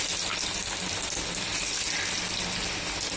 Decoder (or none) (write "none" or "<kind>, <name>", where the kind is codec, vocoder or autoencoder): none